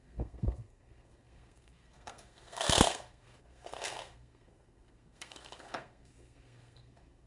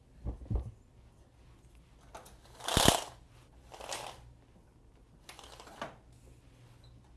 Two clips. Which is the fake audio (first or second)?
first